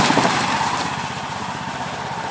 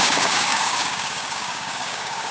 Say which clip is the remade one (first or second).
second